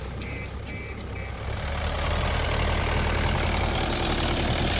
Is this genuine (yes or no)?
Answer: yes